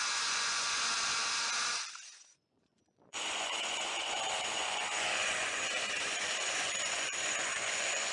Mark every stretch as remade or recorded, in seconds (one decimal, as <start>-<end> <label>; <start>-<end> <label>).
0.0-0.9 remade; 0.9-2.1 recorded; 2.1-8.1 remade